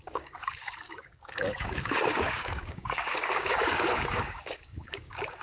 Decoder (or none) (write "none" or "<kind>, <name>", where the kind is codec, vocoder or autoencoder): codec, DAC